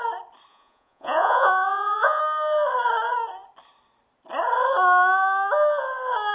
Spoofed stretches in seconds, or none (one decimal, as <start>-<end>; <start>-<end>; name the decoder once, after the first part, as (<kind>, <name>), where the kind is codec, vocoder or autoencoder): 0.5-2.2 (vocoder, Vocos)